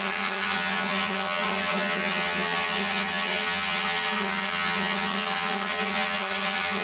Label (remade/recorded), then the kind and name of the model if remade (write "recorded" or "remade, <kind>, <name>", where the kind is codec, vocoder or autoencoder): remade, vocoder, HiFi-GAN